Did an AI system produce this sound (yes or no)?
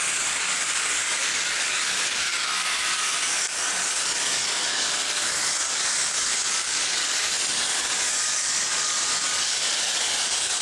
yes